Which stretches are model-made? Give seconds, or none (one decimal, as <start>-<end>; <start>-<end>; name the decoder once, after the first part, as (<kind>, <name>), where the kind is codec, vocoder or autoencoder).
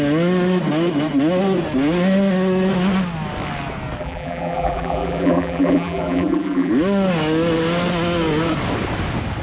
4.0-6.7 (vocoder, BigVGAN v2)